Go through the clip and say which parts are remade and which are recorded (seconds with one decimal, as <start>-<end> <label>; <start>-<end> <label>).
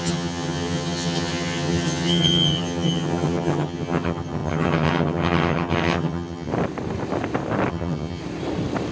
0.0-6.5 remade; 6.5-7.7 recorded; 7.7-8.2 remade; 8.2-8.9 recorded